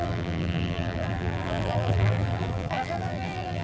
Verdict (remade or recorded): remade